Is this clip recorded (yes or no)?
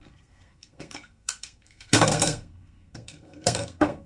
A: no